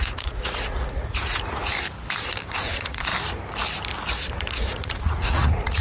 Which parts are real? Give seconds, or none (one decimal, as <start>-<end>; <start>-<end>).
1.7-2.5; 3.1-4.5